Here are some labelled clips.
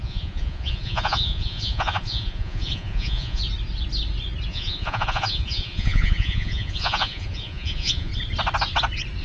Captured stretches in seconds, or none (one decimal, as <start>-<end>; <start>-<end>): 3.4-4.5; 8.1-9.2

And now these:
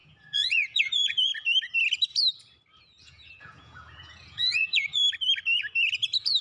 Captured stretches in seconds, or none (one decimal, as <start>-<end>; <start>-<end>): 1.3-2.8; 5.0-6.4

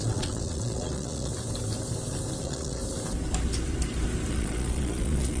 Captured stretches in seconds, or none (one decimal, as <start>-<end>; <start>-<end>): 1.3-2.4; 2.8-4.3

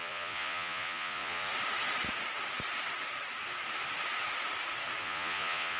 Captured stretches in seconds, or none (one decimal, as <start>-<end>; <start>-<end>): 1.5-5.0

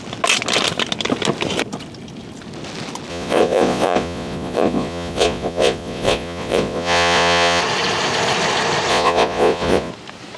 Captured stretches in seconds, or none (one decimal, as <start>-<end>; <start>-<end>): 0.0-3.1; 7.6-8.9; 9.9-10.4

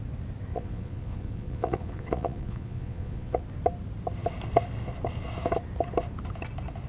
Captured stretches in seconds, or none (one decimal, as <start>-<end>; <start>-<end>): 0.0-0.5; 3.4-6.9